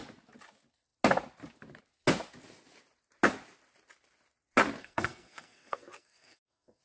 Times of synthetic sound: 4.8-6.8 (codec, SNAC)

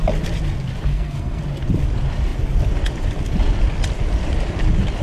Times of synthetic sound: 0.9-1.4 (codec, SNAC)

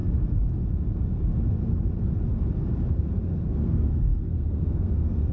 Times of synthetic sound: 3.2-5.3 (codec, SNAC)

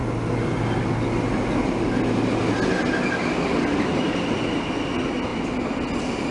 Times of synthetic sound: none

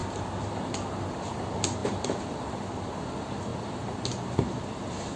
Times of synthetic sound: none

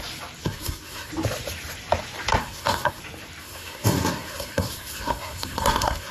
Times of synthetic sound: 0.4-1.1 (codec, SNAC); 2.4-3.0; 3.4-6.1

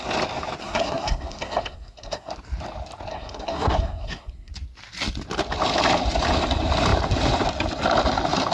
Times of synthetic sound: 0.6-2.3 (codec, SNAC); 3.1-4.5